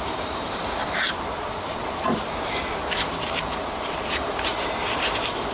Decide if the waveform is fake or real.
fake